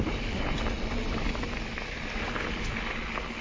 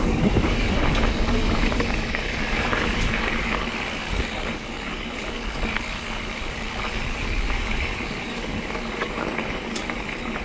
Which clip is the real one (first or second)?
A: first